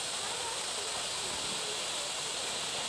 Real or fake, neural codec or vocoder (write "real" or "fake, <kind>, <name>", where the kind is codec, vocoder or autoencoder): real